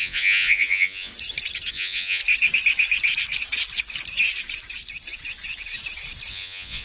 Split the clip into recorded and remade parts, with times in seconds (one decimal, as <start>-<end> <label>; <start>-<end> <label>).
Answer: 0.0-1.1 remade; 1.1-1.7 recorded; 1.7-2.2 remade; 2.2-6.3 recorded; 6.3-6.8 remade